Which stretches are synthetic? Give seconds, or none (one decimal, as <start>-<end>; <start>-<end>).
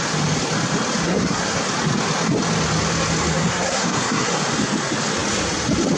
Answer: 1.0-1.6; 3.5-4.3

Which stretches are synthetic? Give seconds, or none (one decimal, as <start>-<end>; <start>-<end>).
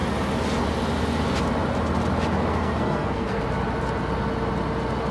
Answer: 2.5-3.4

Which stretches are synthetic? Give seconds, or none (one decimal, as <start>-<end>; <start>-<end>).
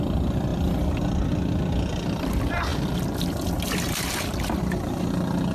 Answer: none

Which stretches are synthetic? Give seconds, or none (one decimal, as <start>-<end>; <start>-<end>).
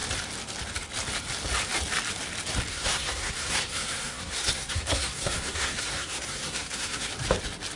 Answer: 2.7-7.1